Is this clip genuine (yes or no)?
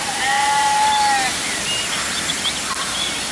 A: no